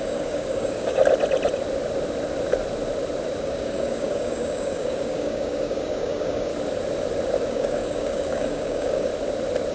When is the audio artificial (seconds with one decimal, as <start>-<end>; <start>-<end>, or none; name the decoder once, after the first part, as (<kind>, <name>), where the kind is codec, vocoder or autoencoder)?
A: 0.0-1.0 (codec, DAC); 3.4-6.5; 7.5-9.1